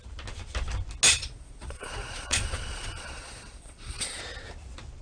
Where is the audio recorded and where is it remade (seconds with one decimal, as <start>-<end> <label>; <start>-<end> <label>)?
0.0-1.2 recorded; 1.2-4.2 remade; 4.2-5.0 recorded